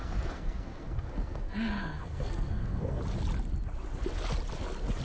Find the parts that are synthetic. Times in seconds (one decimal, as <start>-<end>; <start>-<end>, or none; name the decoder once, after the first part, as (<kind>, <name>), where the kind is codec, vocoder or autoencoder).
0.0-3.0 (codec, SNAC)